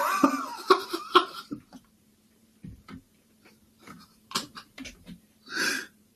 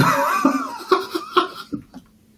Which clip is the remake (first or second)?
first